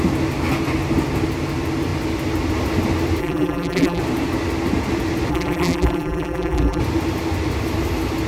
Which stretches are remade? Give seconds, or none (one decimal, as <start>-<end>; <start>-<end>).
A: 3.2-4.0; 5.3-6.8